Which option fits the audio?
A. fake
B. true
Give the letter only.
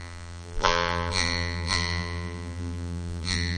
A